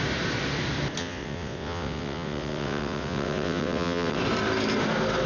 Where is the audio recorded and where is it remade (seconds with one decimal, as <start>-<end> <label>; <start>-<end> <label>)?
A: 0.0-1.0 recorded; 1.0-4.2 remade; 4.2-5.3 recorded